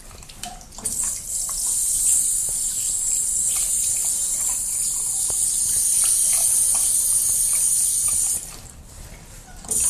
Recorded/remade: recorded